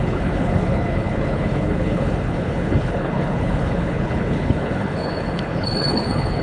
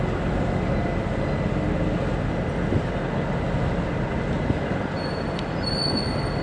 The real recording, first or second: second